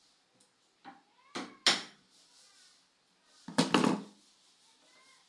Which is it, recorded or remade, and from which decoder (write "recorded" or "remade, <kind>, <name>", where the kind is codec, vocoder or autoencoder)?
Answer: recorded